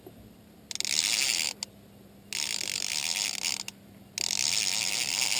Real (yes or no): yes